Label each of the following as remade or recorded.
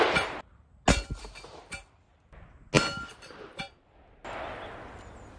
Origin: recorded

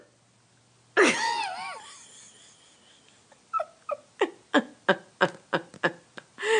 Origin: recorded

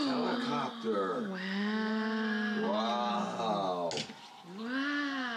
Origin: recorded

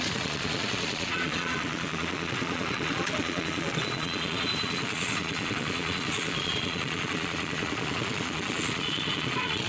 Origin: remade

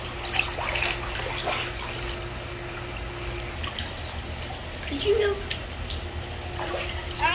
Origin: recorded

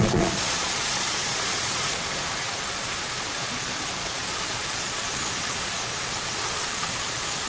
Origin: remade